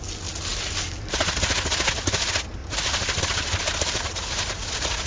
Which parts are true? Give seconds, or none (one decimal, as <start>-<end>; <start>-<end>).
0.0-0.5; 1.2-2.6; 3.2-3.6; 4.1-5.1